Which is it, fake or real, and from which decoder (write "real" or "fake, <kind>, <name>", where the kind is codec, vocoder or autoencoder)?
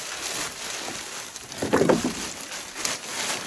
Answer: real